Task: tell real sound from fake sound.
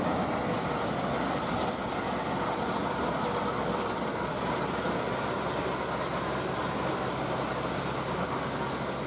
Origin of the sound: real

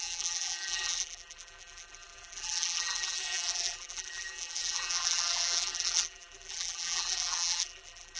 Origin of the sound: fake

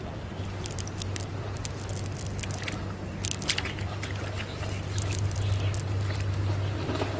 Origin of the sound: real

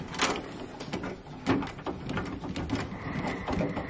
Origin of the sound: real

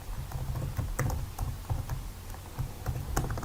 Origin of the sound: real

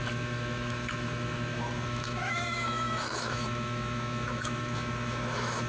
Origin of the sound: fake